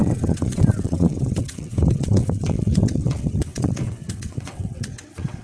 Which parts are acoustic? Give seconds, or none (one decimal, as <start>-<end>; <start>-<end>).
none